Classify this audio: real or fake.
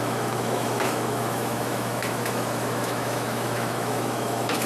fake